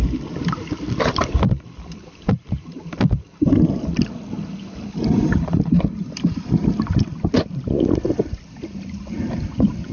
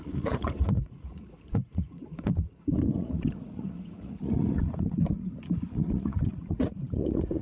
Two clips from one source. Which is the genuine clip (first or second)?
first